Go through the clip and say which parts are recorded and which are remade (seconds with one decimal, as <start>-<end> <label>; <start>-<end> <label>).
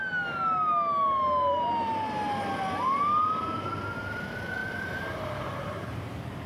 0.0-4.6 recorded; 4.6-6.1 remade; 6.1-6.5 recorded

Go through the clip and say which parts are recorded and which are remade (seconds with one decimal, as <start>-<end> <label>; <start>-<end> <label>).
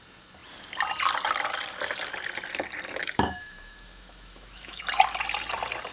0.0-3.0 recorded; 3.0-4.8 remade; 4.8-5.9 recorded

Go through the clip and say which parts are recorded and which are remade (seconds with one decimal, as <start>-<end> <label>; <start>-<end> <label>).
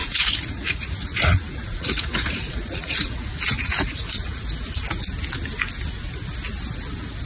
0.0-4.4 remade; 4.4-7.3 recorded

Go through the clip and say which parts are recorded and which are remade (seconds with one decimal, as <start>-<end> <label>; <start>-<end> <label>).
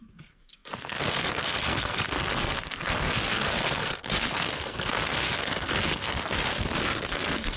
0.0-7.6 remade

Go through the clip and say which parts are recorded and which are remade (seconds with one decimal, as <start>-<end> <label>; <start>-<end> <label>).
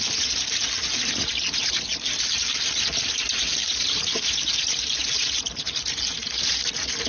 0.0-7.1 remade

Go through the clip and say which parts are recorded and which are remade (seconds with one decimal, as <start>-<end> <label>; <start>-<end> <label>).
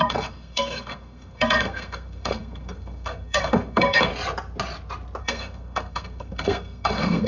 0.0-4.1 remade; 4.1-5.2 recorded; 5.2-7.3 remade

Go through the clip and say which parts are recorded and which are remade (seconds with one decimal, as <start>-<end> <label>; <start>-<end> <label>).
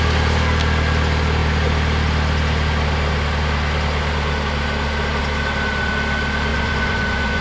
0.0-6.5 recorded; 6.5-7.4 remade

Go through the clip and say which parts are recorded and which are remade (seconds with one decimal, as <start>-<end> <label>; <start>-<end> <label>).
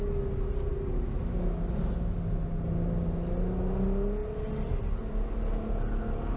0.0-6.4 recorded